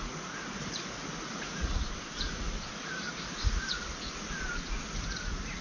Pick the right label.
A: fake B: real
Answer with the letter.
A